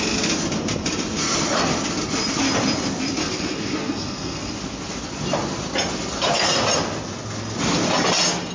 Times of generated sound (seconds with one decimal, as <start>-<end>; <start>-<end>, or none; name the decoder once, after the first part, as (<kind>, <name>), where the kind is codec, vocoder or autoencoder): 3.2-4.5 (codec, SNAC)